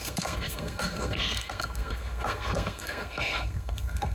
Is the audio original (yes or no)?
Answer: no